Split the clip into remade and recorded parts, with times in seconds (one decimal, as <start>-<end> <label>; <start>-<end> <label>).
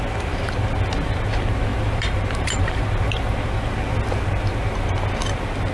0.0-1.7 recorded; 1.7-2.8 remade; 2.8-5.7 recorded